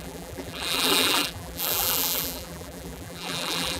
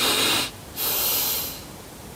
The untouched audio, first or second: second